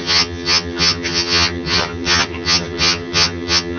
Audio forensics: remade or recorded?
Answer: remade